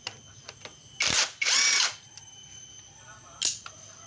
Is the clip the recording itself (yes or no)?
yes